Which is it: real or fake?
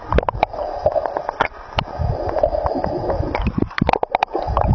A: real